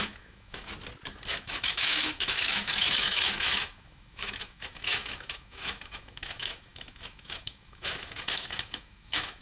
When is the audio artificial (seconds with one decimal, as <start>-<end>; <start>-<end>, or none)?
0.0-0.7; 1.3-9.4